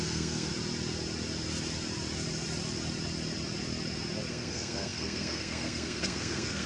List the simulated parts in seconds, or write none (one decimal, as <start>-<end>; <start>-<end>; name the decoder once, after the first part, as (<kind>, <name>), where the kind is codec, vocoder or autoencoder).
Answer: 0.0-0.5 (codec, SNAC); 4.3-6.7